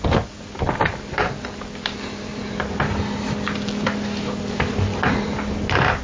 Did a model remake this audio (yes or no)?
no